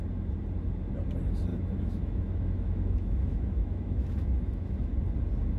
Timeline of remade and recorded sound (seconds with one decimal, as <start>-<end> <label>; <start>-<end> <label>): 0.0-1.5 recorded; 1.5-4.9 remade; 4.9-5.6 recorded